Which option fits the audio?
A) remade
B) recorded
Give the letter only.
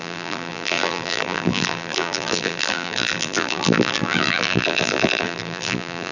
A